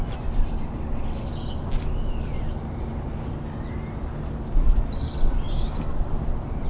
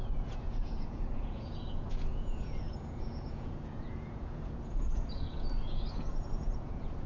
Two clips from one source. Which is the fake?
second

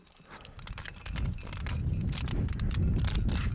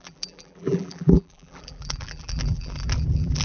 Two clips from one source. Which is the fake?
second